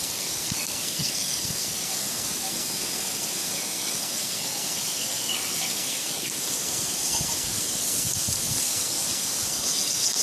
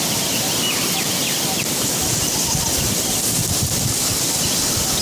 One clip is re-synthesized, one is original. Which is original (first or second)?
second